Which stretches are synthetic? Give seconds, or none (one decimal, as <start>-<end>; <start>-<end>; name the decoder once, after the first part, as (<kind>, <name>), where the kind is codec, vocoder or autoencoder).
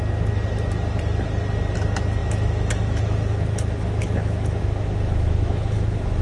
2.2-6.2 (autoencoder, DAC-VAE)